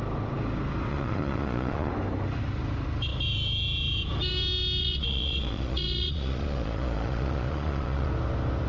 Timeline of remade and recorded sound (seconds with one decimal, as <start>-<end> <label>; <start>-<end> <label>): 0.0-0.9 recorded; 0.9-1.9 remade; 1.9-4.8 recorded; 4.8-8.1 remade; 8.1-8.7 recorded